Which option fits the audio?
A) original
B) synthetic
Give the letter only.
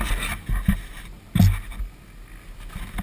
A